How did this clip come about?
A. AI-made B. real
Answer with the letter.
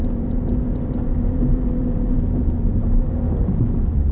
A